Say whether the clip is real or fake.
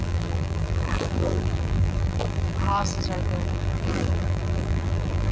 fake